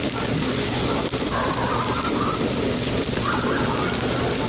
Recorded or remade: recorded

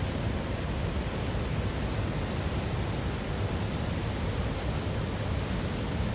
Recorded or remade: recorded